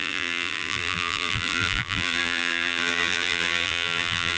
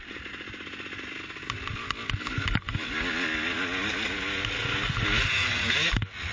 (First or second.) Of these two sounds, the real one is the second